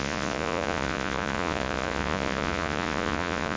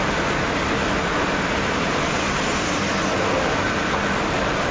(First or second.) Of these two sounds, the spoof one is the first